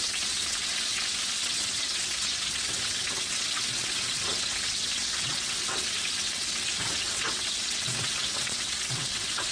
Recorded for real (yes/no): no